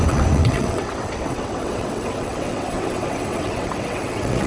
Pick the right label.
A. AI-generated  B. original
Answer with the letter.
A